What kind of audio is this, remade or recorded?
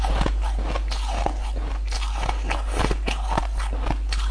recorded